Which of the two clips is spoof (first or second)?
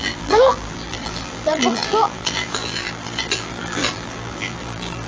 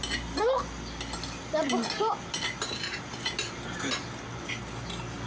first